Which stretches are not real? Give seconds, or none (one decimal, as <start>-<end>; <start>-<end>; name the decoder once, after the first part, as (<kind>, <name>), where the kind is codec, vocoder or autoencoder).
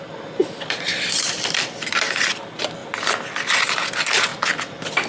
0.4-2.4 (vocoder, BigVGAN v2); 4.3-5.1